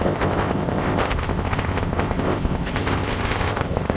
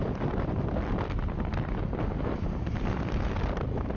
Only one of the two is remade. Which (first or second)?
first